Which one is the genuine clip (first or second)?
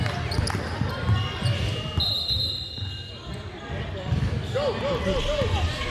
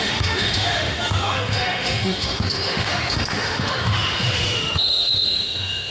first